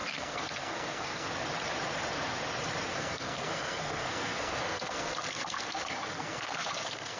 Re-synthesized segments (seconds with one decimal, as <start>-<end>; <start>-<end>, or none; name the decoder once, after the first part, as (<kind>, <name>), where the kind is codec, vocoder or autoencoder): 0.0-1.3 (codec, SNAC); 2.9-7.2